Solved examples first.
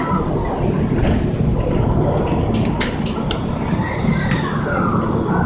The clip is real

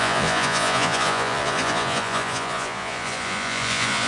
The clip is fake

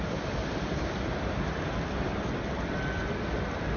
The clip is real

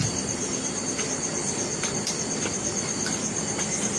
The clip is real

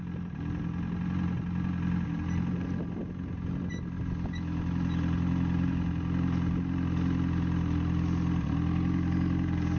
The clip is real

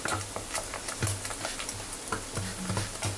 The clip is real